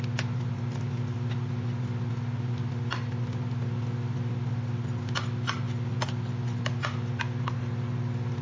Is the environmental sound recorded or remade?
recorded